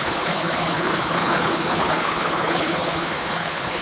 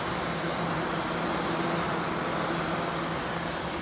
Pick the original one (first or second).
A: second